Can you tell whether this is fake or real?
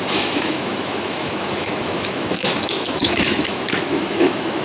fake